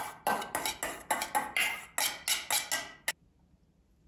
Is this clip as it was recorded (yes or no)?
yes